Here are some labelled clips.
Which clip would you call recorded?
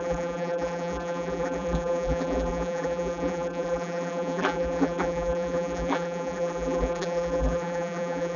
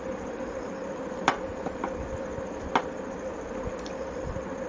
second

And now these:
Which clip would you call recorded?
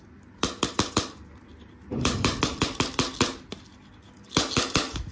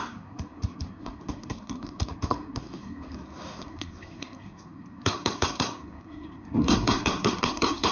first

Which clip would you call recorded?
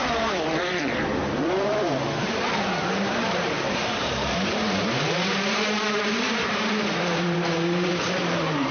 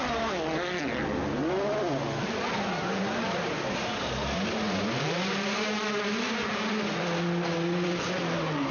second